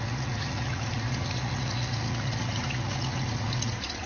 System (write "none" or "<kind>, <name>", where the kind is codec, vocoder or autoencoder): vocoder, Vocos